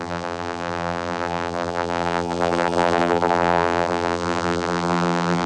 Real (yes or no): no